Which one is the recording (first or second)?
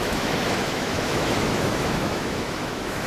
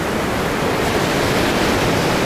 second